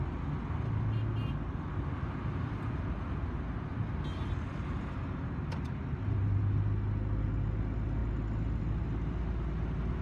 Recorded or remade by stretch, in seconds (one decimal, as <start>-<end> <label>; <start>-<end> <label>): 0.0-10.0 recorded